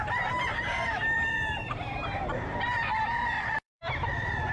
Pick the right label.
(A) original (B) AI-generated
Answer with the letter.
B